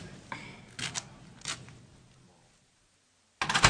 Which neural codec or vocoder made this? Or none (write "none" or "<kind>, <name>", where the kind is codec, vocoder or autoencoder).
none